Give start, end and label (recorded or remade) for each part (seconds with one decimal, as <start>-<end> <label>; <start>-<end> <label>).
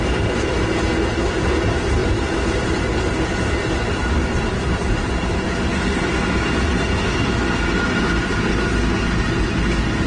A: 0.0-10.1 recorded